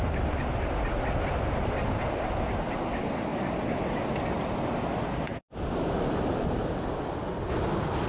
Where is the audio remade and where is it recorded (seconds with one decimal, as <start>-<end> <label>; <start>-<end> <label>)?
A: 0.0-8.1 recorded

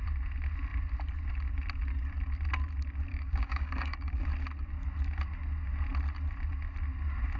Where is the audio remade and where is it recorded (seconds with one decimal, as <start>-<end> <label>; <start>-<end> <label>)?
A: 0.0-3.1 recorded; 3.1-4.2 remade; 4.2-7.4 recorded

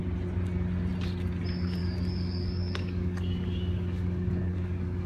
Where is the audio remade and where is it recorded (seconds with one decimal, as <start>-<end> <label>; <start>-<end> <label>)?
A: 0.0-1.8 recorded; 1.8-5.1 remade

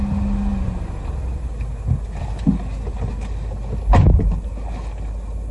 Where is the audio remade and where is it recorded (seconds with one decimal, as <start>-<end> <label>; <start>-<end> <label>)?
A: 0.0-5.5 recorded

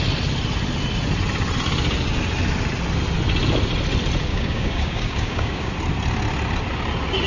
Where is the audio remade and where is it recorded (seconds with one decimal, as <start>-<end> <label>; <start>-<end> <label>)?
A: 0.0-4.3 recorded; 4.3-5.7 remade; 5.7-7.3 recorded